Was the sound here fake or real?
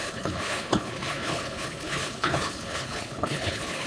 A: fake